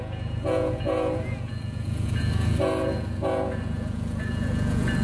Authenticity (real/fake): fake